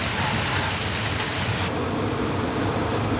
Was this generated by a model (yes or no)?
no